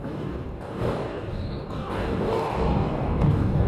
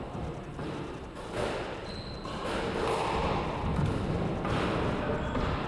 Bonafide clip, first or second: second